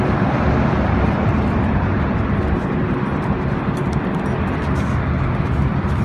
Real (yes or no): yes